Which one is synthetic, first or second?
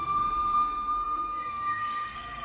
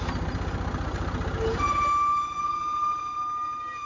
first